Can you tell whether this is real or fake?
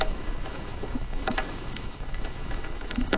fake